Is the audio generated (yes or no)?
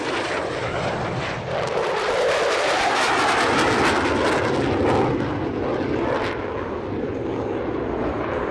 no